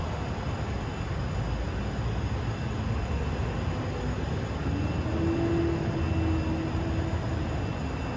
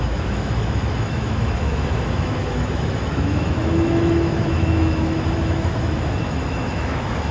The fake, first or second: second